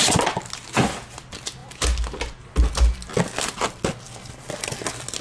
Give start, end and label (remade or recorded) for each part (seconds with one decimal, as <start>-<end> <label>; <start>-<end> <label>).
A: 0.0-5.2 recorded